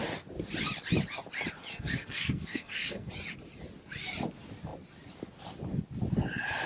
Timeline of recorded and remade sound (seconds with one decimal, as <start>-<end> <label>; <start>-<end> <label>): 0.0-1.7 recorded; 1.7-3.1 remade; 3.1-6.7 recorded